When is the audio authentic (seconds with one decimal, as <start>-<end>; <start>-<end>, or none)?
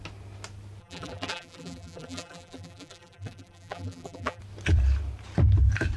0.0-0.8; 4.4-6.0